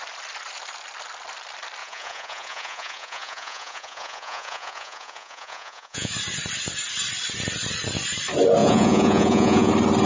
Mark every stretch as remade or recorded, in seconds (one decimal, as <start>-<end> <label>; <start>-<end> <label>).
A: 0.0-1.8 recorded; 1.8-6.1 remade; 6.1-8.6 recorded; 8.6-9.7 remade; 9.7-10.1 recorded